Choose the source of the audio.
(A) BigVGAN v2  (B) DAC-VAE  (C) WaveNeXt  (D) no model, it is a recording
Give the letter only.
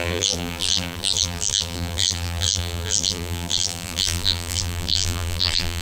A